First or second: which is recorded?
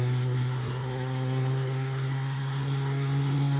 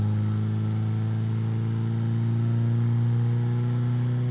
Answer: second